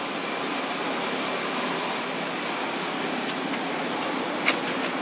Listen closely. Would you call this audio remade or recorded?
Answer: recorded